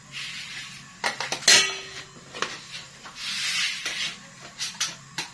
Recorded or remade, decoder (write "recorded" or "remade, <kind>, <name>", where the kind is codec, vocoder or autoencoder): recorded